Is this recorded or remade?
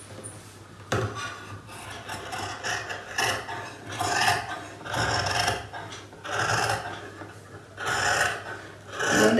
recorded